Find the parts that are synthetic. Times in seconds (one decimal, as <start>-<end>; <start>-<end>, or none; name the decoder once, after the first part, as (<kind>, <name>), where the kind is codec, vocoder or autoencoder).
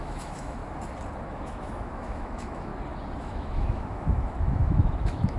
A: 0.0-0.6 (autoencoder, DAC-VAE); 1.3-2.7; 3.2-5.4